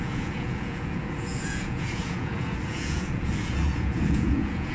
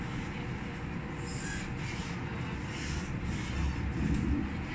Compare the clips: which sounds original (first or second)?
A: second